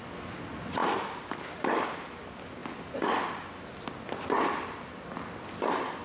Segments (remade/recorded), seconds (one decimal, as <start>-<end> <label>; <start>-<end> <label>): 0.0-6.0 recorded

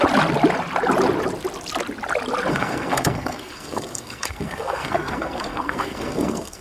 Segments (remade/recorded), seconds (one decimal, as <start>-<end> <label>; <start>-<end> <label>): 0.0-2.5 recorded; 2.5-6.6 remade

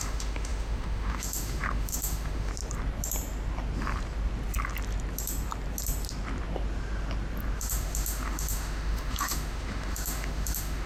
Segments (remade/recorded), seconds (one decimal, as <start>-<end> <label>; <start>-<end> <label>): 0.0-2.5 remade; 2.5-7.6 recorded; 7.6-10.9 remade

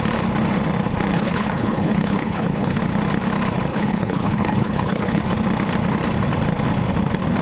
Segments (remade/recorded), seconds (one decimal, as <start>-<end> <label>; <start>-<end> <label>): 0.0-1.1 recorded; 1.1-2.8 remade; 2.8-3.7 recorded; 3.7-5.2 remade; 5.2-7.4 recorded

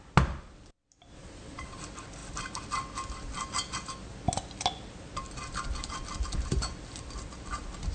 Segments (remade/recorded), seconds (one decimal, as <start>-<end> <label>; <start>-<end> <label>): 0.0-1.2 recorded; 1.2-1.8 remade; 1.8-7.9 recorded

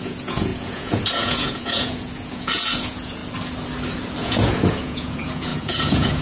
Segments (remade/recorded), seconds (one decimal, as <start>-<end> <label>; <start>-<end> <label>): 0.0-3.2 remade; 3.2-4.2 recorded; 4.2-6.2 remade

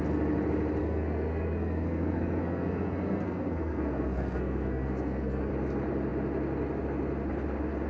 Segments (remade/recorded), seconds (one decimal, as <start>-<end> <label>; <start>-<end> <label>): 0.0-0.8 recorded; 0.8-5.5 remade; 5.5-7.9 recorded